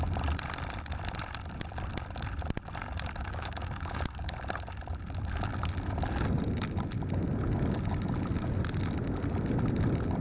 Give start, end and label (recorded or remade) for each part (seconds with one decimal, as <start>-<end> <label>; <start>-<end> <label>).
0.0-3.2 recorded; 3.2-4.3 remade; 4.3-10.2 recorded